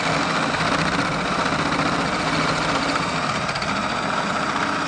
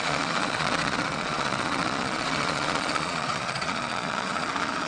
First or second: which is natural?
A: first